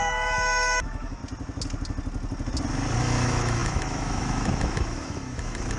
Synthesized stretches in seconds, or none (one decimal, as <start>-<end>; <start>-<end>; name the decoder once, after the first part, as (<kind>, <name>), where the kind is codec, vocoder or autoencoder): 0.0-1.2 (autoencoder, DAC-VAE); 3.0-5.8